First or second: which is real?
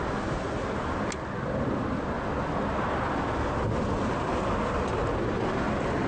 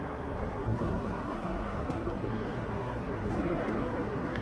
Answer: first